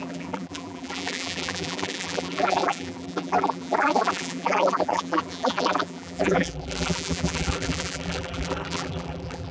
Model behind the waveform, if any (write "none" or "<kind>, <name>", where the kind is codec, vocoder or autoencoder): vocoder, BigVGAN v2